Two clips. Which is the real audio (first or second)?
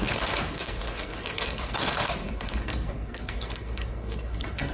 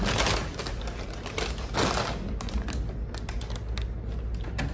second